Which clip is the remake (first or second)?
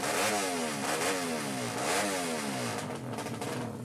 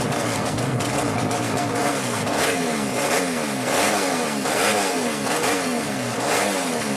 second